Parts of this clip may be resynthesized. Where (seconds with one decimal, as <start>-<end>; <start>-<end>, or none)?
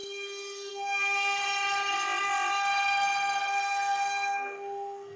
0.0-1.4; 3.5-5.2